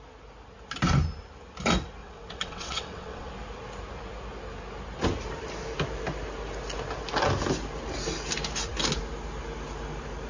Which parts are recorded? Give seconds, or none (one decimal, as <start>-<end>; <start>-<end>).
0.0-2.0; 3.3-10.3